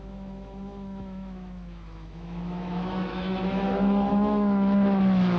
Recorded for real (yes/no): no